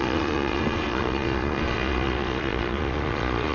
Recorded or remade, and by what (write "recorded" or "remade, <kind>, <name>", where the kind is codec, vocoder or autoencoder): remade, vocoder, Vocos